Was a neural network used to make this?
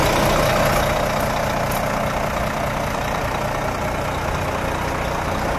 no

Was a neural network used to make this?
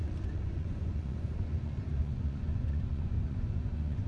yes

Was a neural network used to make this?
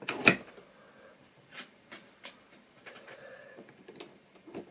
no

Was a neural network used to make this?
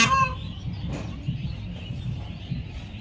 no